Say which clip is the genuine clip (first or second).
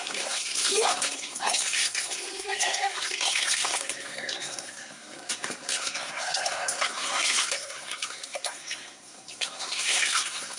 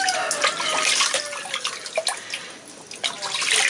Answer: second